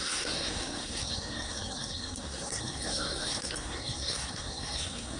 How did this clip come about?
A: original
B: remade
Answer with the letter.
B